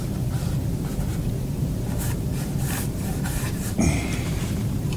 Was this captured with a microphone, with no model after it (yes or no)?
no